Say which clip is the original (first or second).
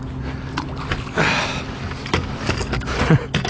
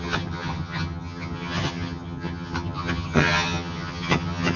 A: first